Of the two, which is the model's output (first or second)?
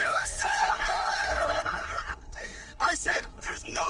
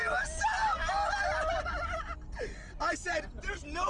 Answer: first